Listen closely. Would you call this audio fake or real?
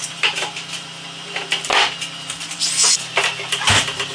fake